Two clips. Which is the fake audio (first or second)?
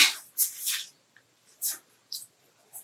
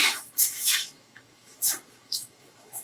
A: second